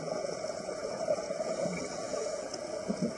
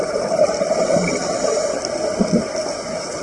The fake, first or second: first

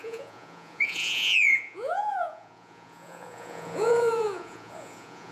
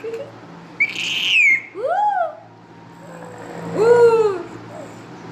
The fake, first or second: first